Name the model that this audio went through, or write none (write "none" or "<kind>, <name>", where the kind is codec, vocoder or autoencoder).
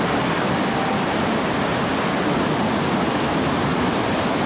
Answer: none